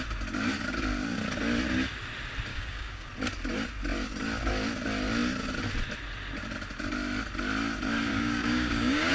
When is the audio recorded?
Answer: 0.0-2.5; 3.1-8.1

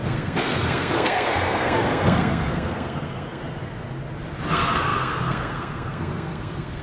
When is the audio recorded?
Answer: 3.4-4.5

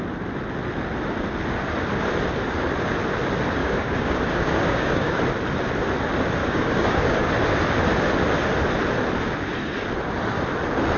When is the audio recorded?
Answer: 0.0-3.6; 5.2-6.4; 7.3-11.0

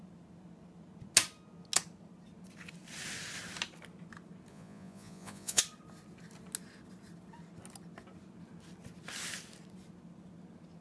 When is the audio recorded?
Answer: 0.0-4.5; 5.6-10.8

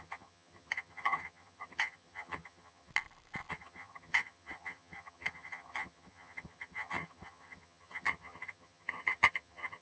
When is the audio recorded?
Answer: 2.9-3.5

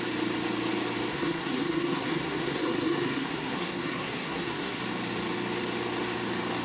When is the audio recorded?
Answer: 0.0-1.1; 4.8-6.6

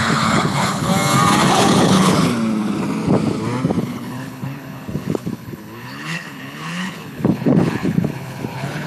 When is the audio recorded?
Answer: 0.9-1.5; 2.3-3.8

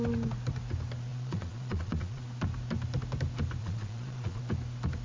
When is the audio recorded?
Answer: 0.0-1.1; 2.2-3.6; 4.4-5.0